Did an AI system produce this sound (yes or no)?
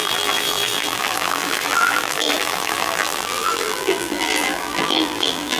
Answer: yes